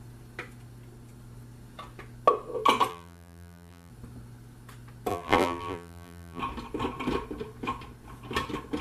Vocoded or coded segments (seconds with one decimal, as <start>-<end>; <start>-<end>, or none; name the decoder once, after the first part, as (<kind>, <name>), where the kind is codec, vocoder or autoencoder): 2.9-3.9 (vocoder, BigVGAN v2); 5.1-6.4